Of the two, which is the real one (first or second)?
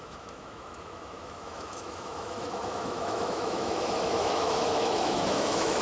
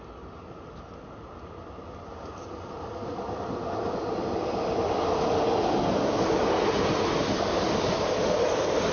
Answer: second